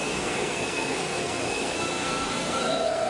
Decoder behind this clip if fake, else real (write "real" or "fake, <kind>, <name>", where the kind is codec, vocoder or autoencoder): fake, codec, SNAC